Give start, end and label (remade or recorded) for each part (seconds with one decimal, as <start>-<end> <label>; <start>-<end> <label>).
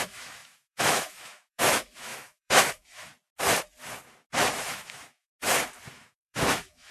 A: 0.0-3.1 remade; 3.1-4.7 recorded; 4.7-5.3 remade; 5.3-5.9 recorded; 5.9-6.9 remade